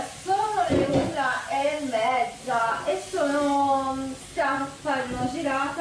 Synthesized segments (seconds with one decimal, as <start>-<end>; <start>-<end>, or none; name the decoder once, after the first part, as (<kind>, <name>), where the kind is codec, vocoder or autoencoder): none